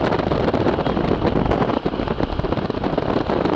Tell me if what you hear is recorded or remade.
recorded